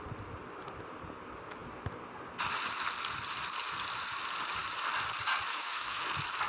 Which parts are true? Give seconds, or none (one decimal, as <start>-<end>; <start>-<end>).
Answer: 0.0-5.5; 6.0-6.5